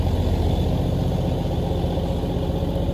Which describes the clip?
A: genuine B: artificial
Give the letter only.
A